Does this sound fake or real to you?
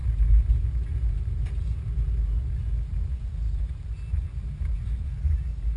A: real